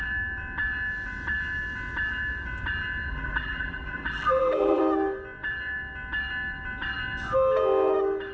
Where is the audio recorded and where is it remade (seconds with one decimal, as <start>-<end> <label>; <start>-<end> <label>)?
0.0-3.1 recorded; 3.1-4.8 remade; 4.8-8.3 recorded